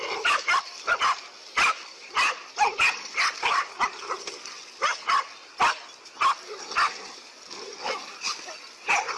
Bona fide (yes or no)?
yes